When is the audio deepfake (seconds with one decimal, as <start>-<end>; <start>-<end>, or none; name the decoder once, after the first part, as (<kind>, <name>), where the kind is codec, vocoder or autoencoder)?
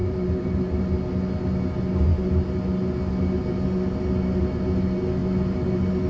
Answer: 0.0-0.8 (vocoder, BigVGAN v2)